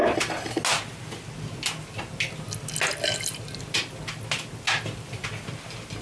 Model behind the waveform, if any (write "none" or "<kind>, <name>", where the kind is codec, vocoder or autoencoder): none